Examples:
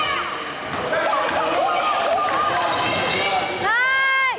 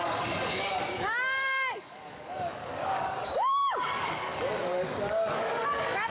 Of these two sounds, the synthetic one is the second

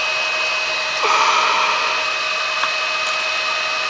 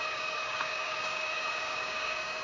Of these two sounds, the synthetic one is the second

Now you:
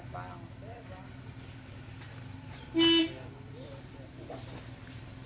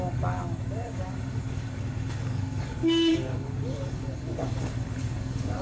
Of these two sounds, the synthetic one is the second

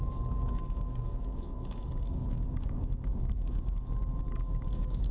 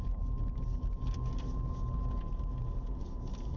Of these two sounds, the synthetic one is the first